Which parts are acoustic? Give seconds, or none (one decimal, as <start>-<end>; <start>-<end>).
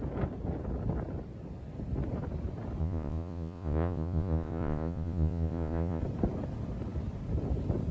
0.0-2.8; 6.0-7.9